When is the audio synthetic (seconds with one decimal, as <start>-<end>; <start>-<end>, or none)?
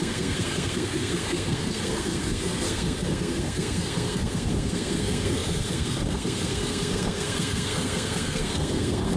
0.0-9.2